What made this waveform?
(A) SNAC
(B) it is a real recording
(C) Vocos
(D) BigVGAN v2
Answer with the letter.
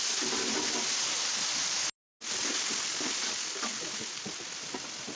B